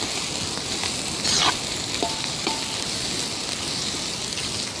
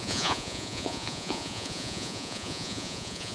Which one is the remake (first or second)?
second